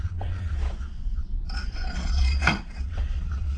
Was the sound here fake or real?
fake